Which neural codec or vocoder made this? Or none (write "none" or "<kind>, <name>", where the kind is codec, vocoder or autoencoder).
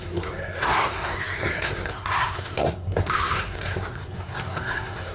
codec, SNAC